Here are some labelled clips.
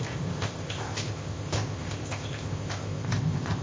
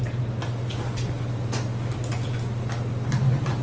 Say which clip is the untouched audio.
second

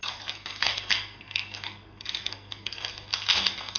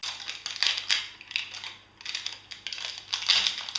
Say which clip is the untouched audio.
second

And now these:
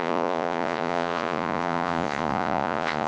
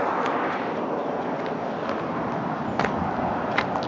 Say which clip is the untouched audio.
second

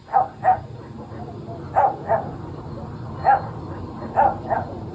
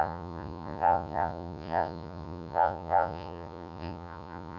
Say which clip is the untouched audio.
first